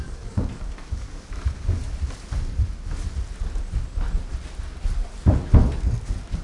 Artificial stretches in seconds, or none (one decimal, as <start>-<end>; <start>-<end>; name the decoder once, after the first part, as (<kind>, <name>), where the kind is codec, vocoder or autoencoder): 0.0-1.8 (codec, DAC); 5.6-6.4